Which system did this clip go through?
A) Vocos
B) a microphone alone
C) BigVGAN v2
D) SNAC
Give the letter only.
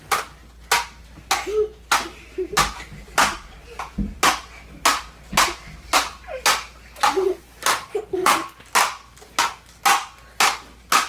B